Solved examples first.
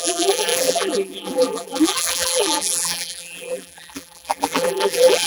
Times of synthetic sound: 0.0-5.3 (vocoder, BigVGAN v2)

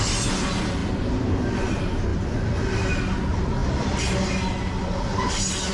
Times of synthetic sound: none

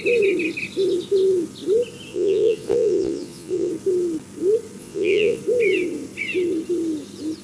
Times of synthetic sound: 2.1-3.7 (vocoder, Vocos); 4.8-5.4

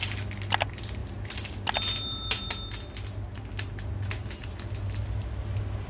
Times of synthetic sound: none

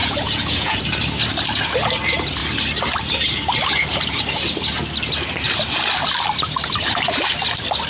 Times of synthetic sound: 0.0-0.8 (vocoder, Vocos)

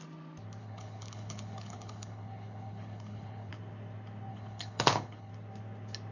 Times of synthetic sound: 0.6-3.5 (codec, HILCodec); 4.3-5.3

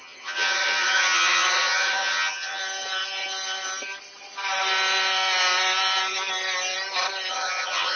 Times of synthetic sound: 0.0-2.6 (vocoder, HiFi-GAN); 7.3-8.0